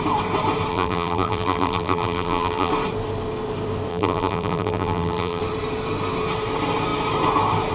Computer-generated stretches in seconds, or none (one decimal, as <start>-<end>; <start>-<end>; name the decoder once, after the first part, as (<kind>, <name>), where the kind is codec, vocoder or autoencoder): 0.7-2.7 (vocoder, BigVGAN v2); 3.9-5.4